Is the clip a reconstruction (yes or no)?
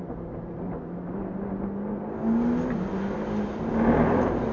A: no